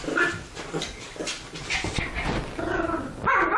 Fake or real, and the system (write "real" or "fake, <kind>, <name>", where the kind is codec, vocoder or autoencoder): real